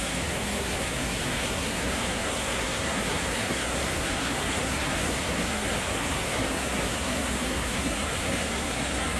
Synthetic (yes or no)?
yes